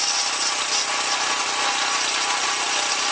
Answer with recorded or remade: recorded